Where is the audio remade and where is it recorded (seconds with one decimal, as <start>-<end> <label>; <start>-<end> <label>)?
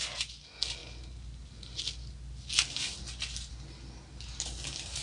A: 0.0-5.0 recorded